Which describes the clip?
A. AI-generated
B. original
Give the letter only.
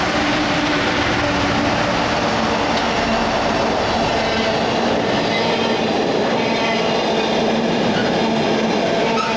B